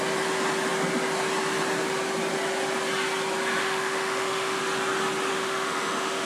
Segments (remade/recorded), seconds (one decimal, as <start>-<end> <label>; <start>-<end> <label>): 0.0-3.6 recorded; 3.6-4.6 remade; 4.6-5.3 recorded; 5.3-6.3 remade